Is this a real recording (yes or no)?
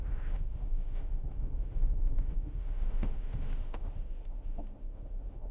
no